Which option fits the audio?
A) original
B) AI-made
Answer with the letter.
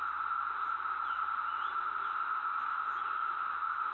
A